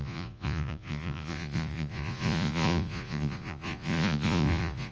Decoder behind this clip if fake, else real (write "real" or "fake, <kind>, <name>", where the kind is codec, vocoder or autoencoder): fake, vocoder, Vocos